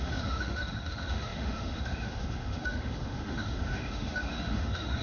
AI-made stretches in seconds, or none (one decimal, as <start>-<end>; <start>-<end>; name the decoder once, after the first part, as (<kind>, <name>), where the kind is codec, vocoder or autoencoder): 0.0-5.0 (autoencoder, DAC-VAE)